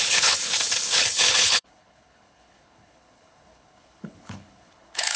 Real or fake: fake